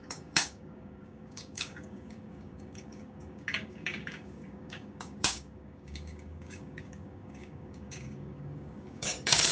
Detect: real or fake fake